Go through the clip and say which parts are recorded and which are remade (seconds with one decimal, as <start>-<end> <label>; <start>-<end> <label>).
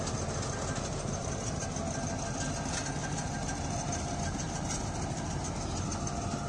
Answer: 0.0-1.2 recorded; 1.2-1.7 remade; 1.7-3.0 recorded; 3.0-5.3 remade; 5.3-6.5 recorded